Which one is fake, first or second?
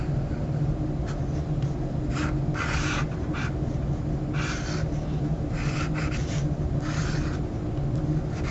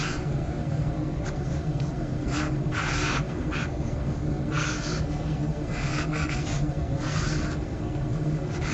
second